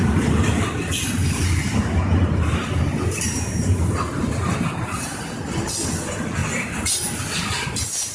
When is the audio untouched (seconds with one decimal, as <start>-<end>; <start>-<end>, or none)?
0.0-8.1

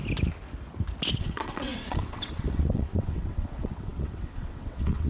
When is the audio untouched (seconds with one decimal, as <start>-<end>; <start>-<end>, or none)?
0.0-1.2